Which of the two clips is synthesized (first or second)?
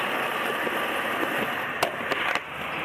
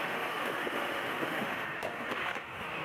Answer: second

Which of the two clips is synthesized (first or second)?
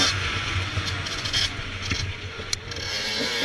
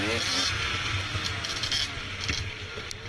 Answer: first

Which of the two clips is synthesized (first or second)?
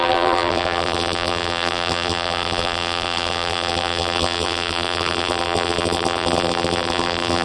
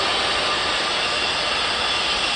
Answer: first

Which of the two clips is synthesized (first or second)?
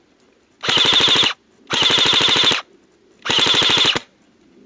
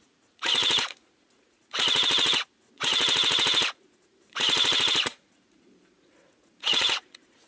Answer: second